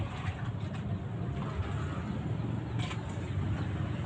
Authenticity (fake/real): real